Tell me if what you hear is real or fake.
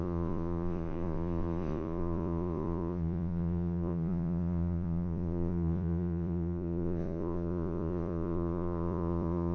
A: fake